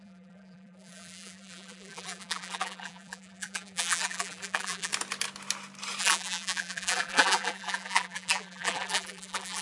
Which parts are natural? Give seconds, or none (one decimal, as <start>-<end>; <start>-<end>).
4.9-6.0